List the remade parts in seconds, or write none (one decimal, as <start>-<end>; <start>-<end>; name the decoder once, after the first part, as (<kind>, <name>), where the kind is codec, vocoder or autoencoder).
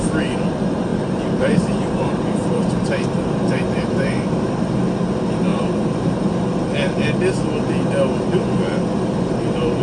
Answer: 0.9-4.3 (vocoder, BigVGAN v2); 5.5-6.2